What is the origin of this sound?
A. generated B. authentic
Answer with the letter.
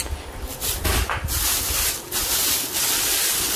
B